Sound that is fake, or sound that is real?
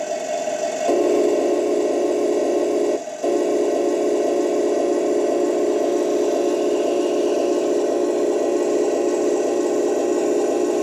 real